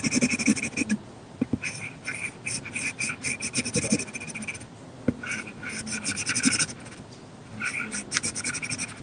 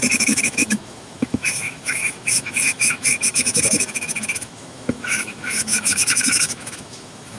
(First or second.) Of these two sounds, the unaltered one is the first